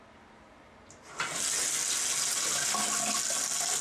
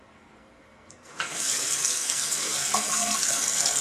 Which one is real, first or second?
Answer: first